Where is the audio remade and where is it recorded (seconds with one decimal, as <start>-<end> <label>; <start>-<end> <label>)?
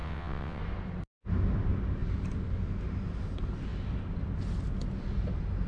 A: 0.0-0.6 remade; 0.6-5.7 recorded